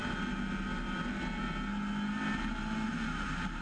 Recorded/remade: recorded